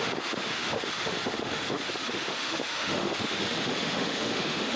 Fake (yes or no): yes